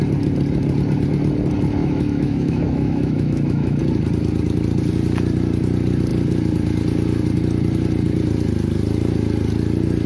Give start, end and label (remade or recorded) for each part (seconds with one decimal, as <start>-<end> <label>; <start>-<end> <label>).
0.0-1.8 recorded; 1.8-3.8 remade; 3.8-10.1 recorded